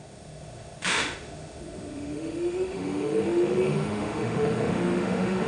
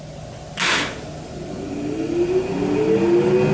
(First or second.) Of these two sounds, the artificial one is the first